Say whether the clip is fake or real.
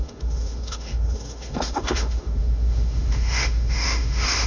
fake